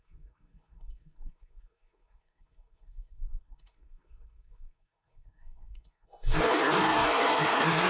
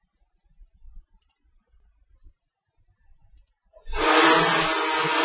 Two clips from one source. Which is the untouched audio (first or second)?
second